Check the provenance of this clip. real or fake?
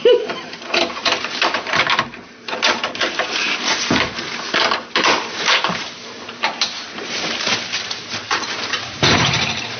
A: fake